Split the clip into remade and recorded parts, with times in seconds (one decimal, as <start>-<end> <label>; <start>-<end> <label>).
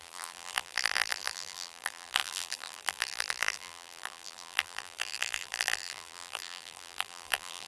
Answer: 0.0-7.7 remade